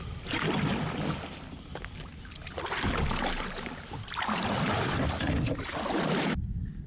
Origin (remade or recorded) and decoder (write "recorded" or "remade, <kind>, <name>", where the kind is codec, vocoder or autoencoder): recorded